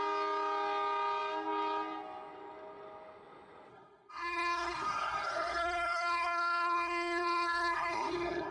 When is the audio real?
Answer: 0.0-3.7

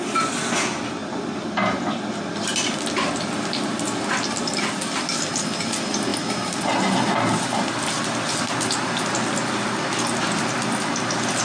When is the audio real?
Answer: 0.0-11.4

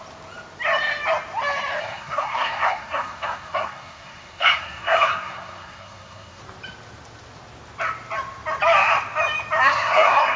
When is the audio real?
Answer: 0.0-1.8; 6.4-9.6